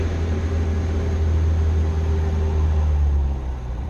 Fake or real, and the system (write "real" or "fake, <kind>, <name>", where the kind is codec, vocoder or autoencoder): real